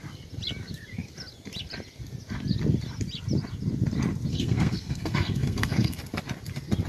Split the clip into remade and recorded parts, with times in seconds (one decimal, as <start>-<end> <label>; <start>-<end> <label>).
0.0-4.3 recorded; 4.3-6.0 remade; 6.0-6.9 recorded